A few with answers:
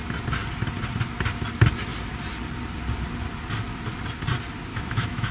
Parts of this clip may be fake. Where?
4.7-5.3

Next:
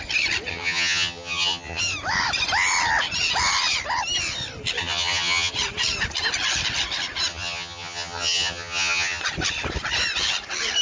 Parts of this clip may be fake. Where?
0.5-1.8; 4.8-5.5; 7.3-9.2

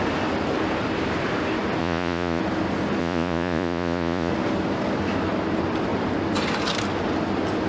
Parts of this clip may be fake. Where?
1.8-2.4; 3.0-4.3

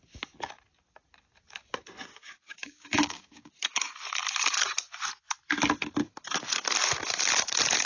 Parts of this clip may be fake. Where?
2.1-3.5

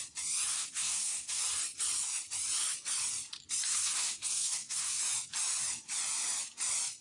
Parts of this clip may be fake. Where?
0.5-1.4; 3.7-5.0

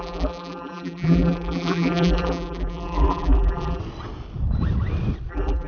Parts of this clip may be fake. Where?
0.0-3.8; 5.3-5.7

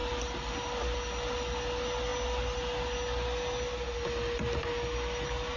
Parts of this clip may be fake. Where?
none